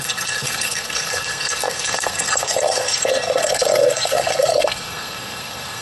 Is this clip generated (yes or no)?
yes